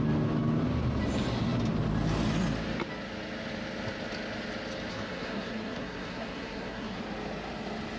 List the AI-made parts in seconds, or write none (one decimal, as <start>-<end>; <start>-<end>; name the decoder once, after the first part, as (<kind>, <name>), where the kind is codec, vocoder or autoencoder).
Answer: 4.9-7.0 (codec, SNAC)